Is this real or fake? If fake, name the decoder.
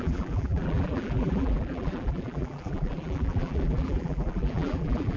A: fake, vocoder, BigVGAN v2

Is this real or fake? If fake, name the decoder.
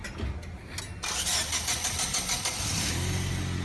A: real